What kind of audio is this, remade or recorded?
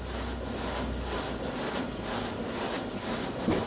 recorded